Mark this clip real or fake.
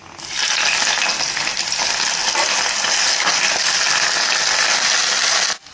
real